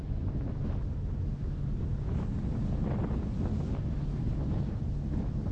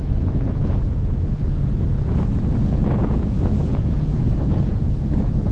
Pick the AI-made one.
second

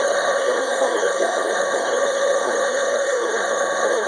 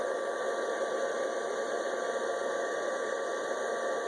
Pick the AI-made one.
first